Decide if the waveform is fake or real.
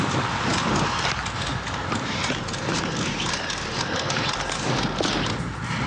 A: real